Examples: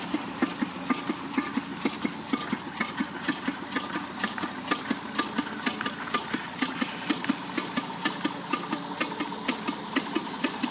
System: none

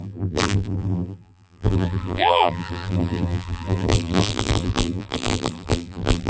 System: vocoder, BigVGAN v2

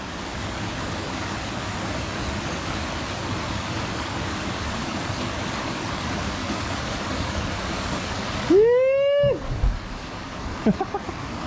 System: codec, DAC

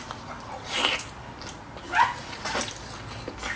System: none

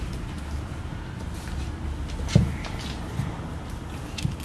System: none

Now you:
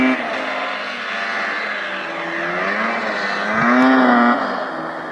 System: none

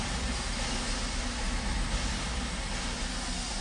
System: none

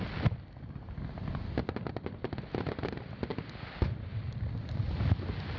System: none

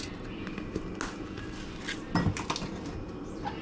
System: none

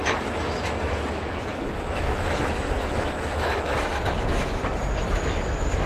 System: autoencoder, DAC-VAE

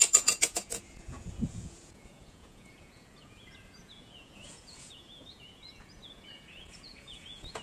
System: vocoder, Vocos